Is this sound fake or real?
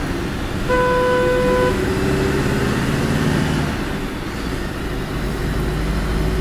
real